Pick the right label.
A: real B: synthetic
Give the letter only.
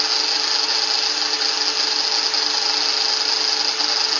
A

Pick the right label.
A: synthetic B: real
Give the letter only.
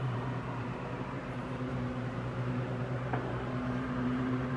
A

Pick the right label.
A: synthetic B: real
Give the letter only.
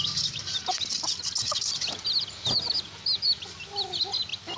B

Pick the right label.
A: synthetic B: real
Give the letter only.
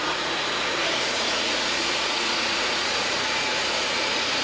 A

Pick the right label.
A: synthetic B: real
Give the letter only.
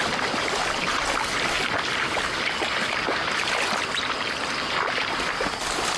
B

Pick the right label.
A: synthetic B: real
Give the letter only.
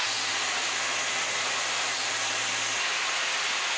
B